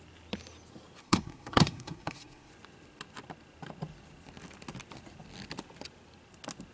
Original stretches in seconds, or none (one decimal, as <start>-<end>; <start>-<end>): 0.0-1.0; 2.5-6.7